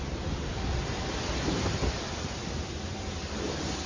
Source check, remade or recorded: remade